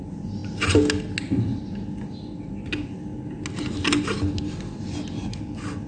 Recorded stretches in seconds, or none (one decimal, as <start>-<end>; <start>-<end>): 0.0-5.9